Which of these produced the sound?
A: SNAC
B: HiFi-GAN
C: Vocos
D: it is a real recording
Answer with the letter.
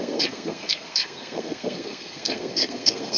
A